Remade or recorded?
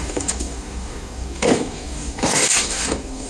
remade